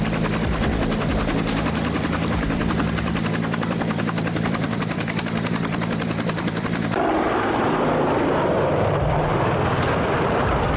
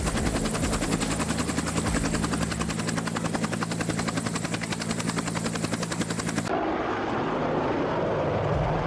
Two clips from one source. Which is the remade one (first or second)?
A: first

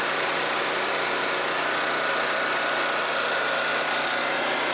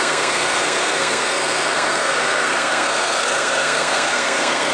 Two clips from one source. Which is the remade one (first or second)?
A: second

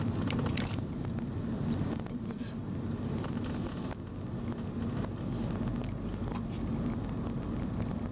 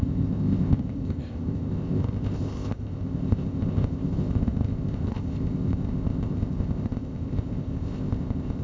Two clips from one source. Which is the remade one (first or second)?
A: second